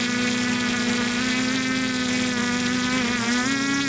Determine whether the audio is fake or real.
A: real